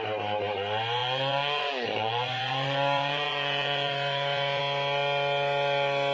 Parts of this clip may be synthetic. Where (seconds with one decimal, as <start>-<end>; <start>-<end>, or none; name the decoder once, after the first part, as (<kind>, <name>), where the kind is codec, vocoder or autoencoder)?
1.0-4.6 (vocoder, Vocos)